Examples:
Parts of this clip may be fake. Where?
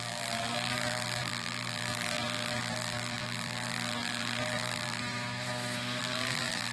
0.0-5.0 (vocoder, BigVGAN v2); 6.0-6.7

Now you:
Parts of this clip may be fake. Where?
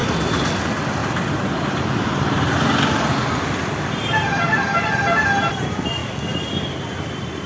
0.0-0.6 (vocoder, BigVGAN v2); 1.0-4.9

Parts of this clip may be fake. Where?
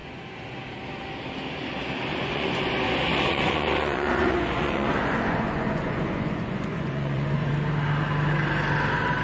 0.0-0.5 (vocoder, Vocos); 2.1-2.7; 3.1-7.5